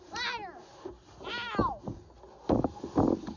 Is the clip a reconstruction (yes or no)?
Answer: no